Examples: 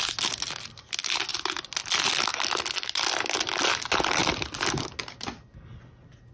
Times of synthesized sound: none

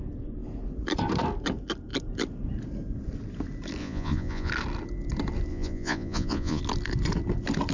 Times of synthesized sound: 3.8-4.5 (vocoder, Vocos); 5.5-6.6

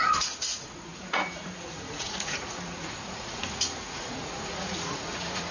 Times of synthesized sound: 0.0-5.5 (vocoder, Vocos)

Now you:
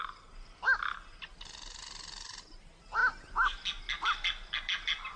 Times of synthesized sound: none

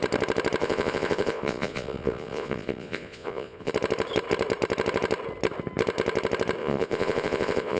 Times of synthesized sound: 0.6-3.7 (vocoder, Vocos); 6.6-7.8

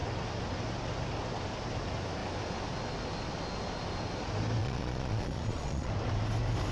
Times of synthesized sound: 4.6-5.9 (vocoder, Vocos)

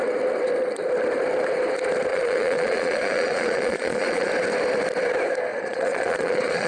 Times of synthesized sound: 2.1-4.3 (vocoder, Vocos); 5.5-6.7